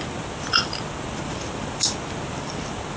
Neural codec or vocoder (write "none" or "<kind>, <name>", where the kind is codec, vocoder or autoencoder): none